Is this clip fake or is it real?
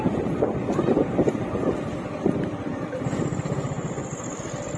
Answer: fake